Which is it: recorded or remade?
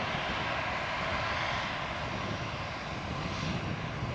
recorded